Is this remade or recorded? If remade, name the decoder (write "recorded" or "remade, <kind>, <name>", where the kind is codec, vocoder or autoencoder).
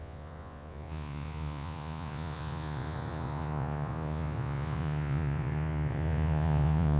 remade, vocoder, Vocos